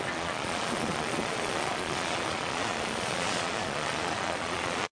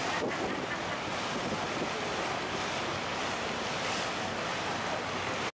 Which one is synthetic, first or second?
first